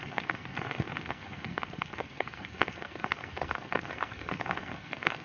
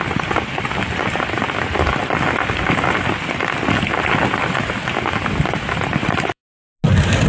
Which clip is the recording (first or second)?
second